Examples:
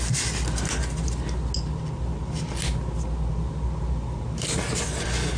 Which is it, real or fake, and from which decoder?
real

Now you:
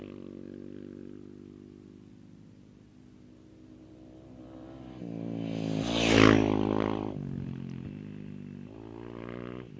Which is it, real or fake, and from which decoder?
real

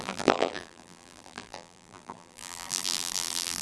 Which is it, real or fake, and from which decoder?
fake, vocoder, BigVGAN v2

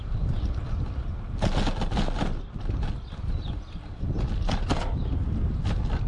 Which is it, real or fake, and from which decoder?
real